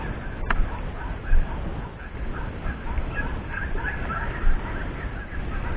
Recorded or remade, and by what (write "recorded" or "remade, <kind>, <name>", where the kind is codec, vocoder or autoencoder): recorded